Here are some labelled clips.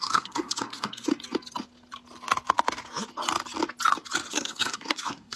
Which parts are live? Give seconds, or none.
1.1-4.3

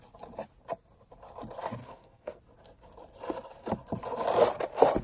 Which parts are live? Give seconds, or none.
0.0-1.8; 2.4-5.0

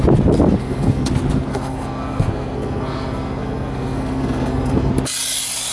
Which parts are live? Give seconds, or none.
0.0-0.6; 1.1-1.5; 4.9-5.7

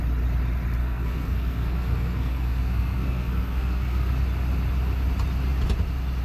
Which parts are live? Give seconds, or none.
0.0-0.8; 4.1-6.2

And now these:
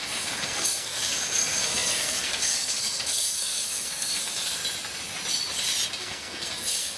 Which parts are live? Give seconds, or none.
4.6-6.0

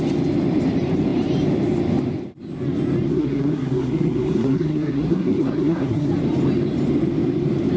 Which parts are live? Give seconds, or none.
0.0-3.1; 6.1-7.8

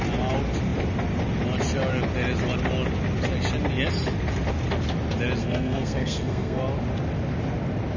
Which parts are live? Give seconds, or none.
0.0-5.4; 6.6-8.0

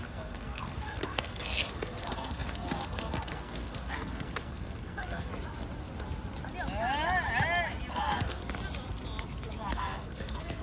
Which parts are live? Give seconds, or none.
5.3-7.9; 8.4-9.7